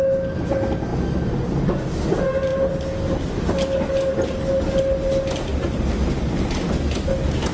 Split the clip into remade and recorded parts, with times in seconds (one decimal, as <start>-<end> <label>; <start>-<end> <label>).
0.0-7.5 recorded